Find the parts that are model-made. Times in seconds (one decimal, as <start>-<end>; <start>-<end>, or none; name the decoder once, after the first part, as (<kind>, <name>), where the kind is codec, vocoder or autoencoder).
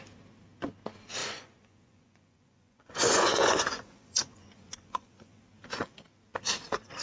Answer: 1.2-5.4 (vocoder, Vocos)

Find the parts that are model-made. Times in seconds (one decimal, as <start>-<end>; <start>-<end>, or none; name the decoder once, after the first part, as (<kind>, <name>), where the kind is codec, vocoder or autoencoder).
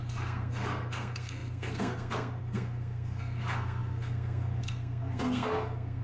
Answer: 0.0-6.0 (codec, SNAC)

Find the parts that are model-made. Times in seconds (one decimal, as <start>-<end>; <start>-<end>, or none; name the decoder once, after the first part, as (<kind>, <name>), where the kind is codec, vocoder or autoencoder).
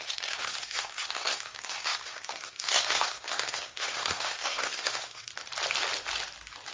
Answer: 0.0-5.3 (codec, SNAC)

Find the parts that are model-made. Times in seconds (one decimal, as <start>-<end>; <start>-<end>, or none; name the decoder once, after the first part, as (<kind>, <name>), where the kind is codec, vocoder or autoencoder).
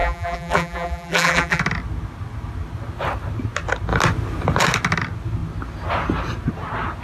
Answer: 0.0-1.6 (vocoder, BigVGAN v2)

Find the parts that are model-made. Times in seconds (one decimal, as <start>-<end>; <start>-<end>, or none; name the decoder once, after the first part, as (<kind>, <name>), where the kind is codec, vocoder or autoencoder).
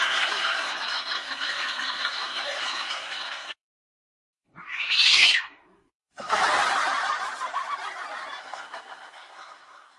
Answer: 0.0-6.4 (codec, SNAC); 8.4-10.0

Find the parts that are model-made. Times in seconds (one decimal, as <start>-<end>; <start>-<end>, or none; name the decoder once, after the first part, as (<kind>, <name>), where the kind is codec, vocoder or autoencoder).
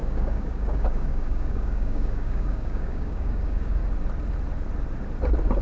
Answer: 0.0-3.8 (codec, DAC)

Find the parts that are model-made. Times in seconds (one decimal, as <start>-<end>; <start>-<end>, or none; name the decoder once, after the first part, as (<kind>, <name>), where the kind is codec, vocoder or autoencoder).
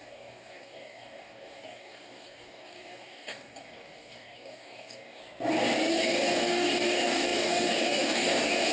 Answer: 0.0-5.2 (codec, DAC); 5.9-8.7